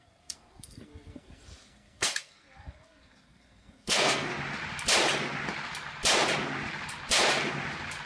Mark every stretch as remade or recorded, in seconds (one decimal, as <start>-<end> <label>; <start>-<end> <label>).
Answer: 0.0-4.3 remade; 4.3-8.1 recorded

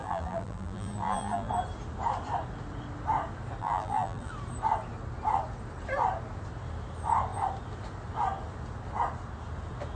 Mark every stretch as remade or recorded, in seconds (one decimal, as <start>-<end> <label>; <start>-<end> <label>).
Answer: 0.0-1.5 remade; 1.5-3.6 recorded; 3.6-4.3 remade; 4.3-10.0 recorded

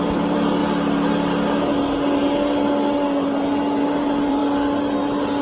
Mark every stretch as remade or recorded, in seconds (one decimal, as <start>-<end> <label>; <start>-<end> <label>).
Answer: 0.0-0.6 remade; 0.6-3.8 recorded; 3.8-4.4 remade; 4.4-5.4 recorded

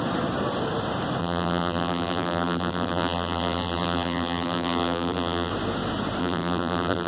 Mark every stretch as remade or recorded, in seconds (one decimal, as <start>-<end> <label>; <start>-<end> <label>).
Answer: 0.0-1.2 recorded; 1.2-5.5 remade; 5.5-6.2 recorded; 6.2-7.1 remade

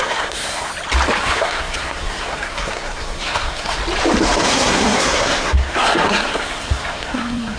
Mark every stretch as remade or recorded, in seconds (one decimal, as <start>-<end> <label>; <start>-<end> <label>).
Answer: 0.0-0.7 remade; 0.7-1.2 recorded; 1.2-3.8 remade; 3.8-4.4 recorded; 4.4-7.6 remade

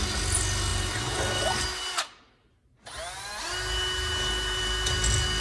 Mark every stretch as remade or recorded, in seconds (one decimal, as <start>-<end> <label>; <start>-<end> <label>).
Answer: 0.0-5.4 recorded